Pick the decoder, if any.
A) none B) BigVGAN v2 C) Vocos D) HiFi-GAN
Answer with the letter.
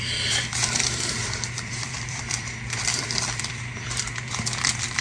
B